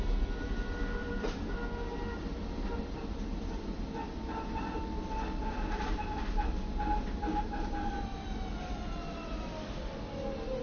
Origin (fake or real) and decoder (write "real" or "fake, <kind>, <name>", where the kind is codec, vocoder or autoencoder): real